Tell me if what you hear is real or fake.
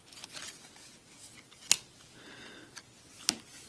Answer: real